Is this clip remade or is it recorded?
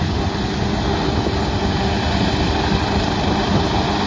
recorded